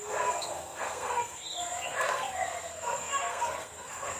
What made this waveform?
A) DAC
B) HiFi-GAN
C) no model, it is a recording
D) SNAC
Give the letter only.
D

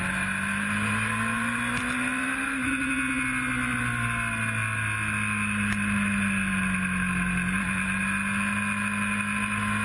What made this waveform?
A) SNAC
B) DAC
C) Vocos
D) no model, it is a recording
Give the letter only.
D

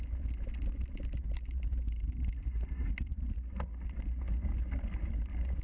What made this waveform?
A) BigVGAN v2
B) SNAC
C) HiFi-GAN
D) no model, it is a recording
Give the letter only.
D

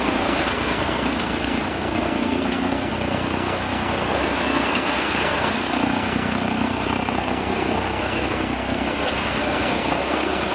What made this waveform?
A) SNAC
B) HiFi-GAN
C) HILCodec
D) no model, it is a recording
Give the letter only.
A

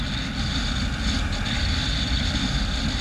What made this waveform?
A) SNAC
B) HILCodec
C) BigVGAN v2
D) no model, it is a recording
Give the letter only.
D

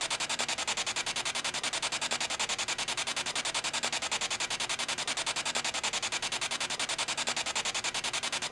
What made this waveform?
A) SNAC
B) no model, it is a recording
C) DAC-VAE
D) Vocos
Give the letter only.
B